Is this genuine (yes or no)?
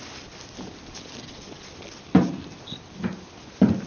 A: yes